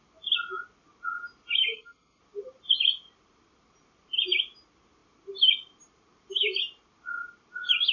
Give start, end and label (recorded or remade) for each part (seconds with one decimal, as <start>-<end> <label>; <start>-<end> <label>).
0.0-1.7 recorded; 1.7-2.2 remade; 2.2-7.9 recorded